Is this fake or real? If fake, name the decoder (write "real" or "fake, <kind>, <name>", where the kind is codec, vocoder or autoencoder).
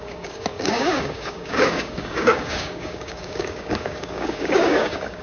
fake, codec, DAC